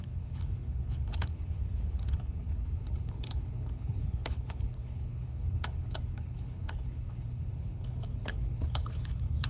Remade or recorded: remade